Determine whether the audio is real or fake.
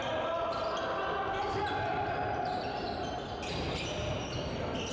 real